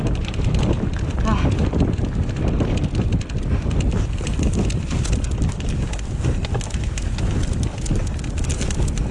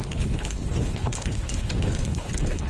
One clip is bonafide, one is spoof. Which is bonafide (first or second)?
first